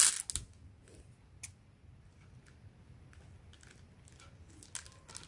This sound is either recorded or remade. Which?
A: recorded